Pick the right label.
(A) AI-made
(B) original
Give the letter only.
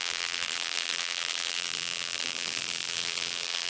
A